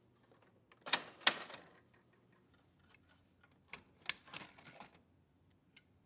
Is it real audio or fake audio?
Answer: real